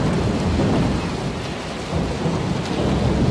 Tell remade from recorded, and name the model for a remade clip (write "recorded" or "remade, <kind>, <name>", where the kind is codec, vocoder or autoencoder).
recorded